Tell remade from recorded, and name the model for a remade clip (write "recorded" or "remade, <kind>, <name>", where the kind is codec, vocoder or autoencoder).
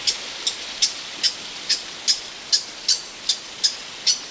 recorded